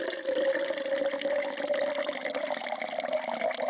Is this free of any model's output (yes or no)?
yes